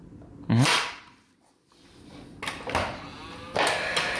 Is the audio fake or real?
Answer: real